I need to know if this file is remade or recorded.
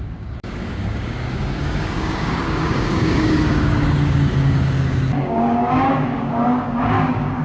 remade